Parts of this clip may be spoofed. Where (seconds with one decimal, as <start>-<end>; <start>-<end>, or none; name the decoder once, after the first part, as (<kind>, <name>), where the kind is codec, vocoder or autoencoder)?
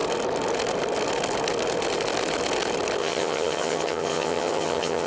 3.0-5.1 (vocoder, HiFi-GAN)